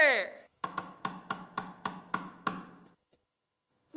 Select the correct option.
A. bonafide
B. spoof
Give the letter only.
B